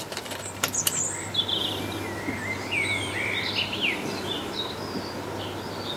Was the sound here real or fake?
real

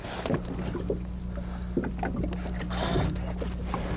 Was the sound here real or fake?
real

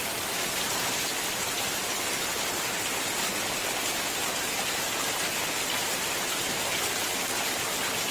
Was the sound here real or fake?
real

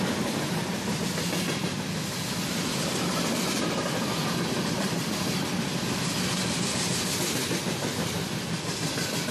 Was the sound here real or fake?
real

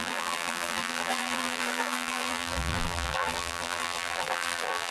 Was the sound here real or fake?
fake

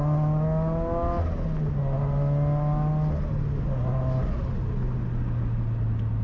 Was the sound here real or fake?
real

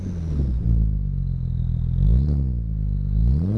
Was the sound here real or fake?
real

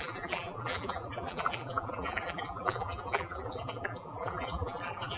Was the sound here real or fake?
fake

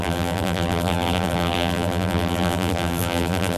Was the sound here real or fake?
fake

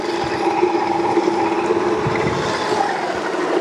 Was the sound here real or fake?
fake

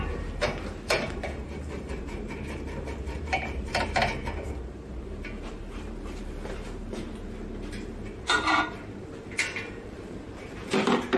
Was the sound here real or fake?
fake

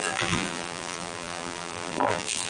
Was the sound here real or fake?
fake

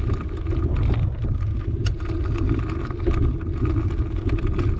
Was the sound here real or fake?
real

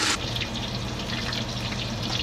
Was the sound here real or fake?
real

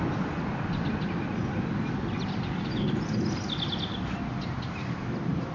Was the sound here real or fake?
real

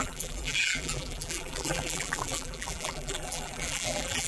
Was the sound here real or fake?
fake